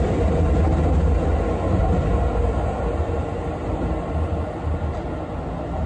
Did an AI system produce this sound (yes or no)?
no